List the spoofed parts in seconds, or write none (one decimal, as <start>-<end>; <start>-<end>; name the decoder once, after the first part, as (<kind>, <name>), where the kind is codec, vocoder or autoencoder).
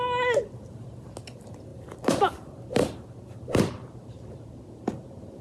1.7-4.3 (vocoder, BigVGAN v2)